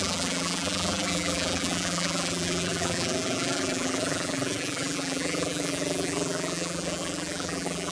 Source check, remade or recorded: remade